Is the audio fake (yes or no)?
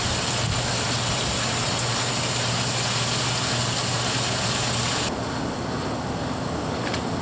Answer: no